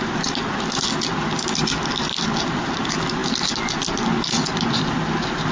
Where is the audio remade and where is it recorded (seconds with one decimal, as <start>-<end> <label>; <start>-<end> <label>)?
0.0-5.5 recorded